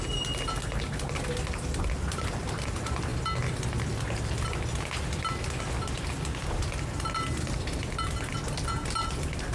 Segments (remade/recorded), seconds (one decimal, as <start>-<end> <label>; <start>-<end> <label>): 0.0-9.5 recorded